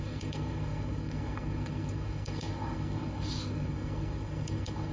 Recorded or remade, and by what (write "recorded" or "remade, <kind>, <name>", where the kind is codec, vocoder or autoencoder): remade, codec, SNAC